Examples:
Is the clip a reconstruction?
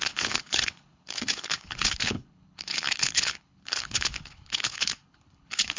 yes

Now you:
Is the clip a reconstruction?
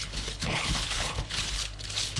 yes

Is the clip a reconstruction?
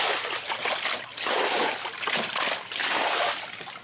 no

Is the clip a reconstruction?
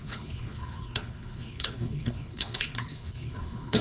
yes